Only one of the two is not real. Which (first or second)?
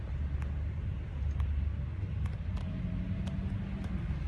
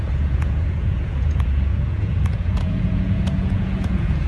second